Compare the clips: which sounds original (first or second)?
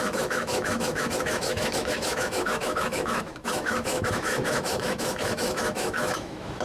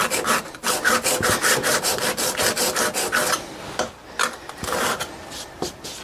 second